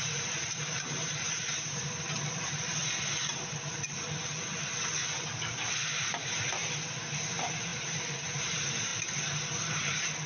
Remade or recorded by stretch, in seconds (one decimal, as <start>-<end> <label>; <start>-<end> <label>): 0.0-2.8 remade; 2.8-5.2 recorded; 5.2-6.6 remade; 6.6-7.3 recorded; 7.3-8.9 remade; 8.9-9.7 recorded; 9.7-10.3 remade